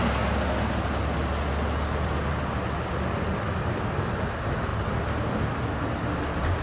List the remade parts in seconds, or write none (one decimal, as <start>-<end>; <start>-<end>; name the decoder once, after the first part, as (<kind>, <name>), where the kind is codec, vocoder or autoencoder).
none